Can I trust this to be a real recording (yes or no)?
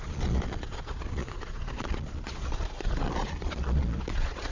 no